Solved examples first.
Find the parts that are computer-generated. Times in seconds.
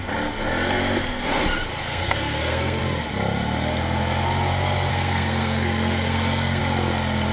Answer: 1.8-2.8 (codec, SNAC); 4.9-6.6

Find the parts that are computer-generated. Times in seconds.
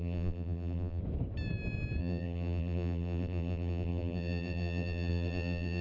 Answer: 0.0-1.0 (vocoder, BigVGAN v2); 2.0-5.8